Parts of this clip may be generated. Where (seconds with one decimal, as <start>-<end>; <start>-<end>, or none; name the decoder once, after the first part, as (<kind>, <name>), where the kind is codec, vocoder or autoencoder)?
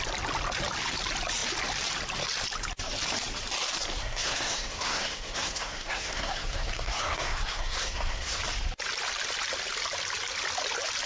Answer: 4.0-8.4 (codec, SNAC)